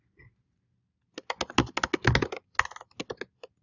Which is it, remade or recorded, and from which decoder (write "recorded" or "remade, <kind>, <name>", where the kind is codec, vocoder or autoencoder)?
recorded